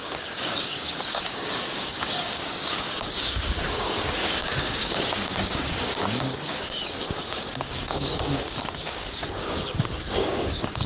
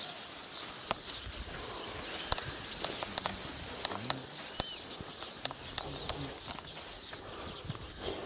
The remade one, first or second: first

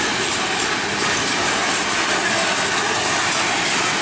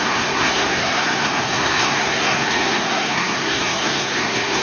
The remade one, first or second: second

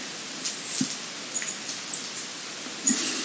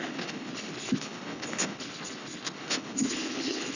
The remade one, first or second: second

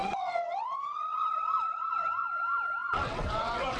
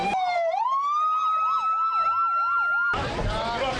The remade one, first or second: first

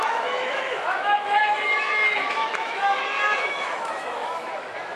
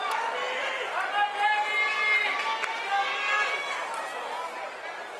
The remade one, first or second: first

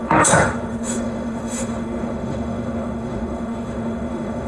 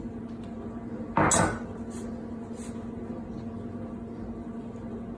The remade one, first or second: first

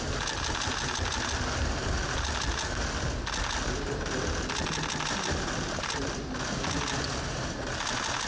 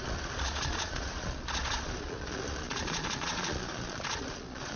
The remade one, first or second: second